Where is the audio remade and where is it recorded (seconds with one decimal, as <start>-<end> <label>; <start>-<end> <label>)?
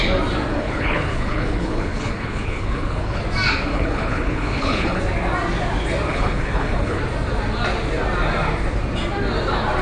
0.0-0.5 recorded; 0.5-3.2 remade; 3.2-3.7 recorded; 3.7-5.0 remade; 5.0-6.1 recorded; 6.1-7.0 remade; 7.0-9.8 recorded